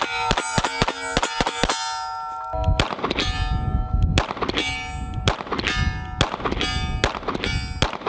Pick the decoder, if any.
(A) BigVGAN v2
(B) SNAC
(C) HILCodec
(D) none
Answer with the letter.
D